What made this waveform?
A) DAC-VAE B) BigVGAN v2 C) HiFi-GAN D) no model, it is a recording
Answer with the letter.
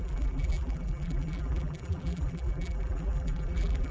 B